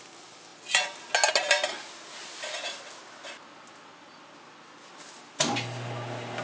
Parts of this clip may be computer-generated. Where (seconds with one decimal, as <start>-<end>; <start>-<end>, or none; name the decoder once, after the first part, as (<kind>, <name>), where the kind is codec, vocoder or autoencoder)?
none